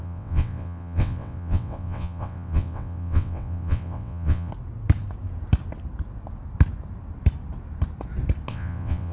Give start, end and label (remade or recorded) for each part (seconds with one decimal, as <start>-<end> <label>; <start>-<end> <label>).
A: 0.0-4.5 remade; 4.5-8.5 recorded; 8.5-9.1 remade